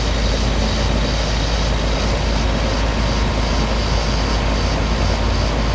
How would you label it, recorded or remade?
recorded